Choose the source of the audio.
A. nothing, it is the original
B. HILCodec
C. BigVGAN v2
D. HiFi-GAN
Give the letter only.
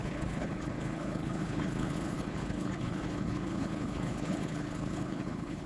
B